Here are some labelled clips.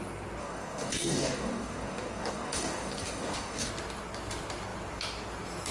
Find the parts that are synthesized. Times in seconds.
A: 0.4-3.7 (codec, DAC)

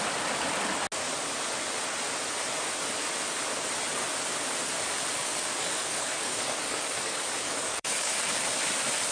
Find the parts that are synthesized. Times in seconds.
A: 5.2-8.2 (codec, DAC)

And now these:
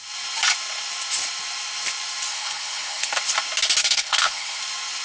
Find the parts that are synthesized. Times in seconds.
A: 2.3-3.1 (codec, HILCodec); 3.8-4.6

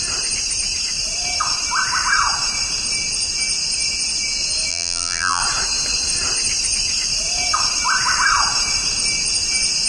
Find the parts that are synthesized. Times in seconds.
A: 4.7-5.4 (vocoder, BigVGAN v2)

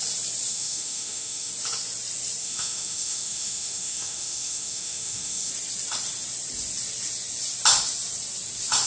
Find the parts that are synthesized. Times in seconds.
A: 0.5-1.5 (autoencoder, DAC-VAE); 2.4-5.5